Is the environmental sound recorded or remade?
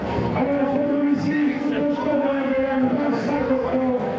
remade